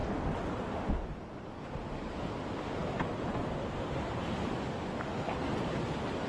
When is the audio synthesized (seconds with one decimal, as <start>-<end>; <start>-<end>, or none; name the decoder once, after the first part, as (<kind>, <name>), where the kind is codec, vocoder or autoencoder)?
5.1-5.8 (vocoder, BigVGAN v2)